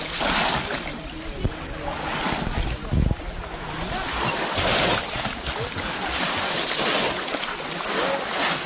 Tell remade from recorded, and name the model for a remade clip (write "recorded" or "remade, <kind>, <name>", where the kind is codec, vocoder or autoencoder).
recorded